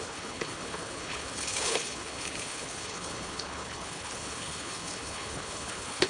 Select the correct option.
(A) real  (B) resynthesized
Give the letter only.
B